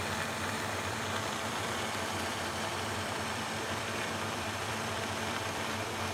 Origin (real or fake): fake